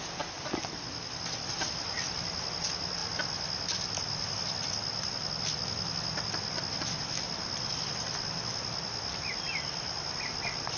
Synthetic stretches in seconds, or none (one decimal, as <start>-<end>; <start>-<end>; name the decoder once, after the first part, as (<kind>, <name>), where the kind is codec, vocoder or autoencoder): none